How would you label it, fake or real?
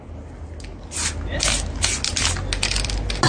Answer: real